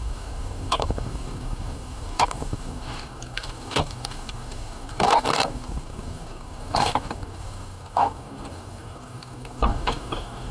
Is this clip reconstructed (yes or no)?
yes